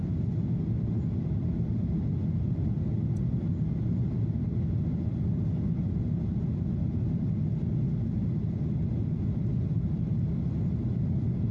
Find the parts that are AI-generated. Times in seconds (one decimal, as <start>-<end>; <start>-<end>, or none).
none